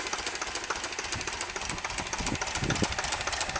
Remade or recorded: recorded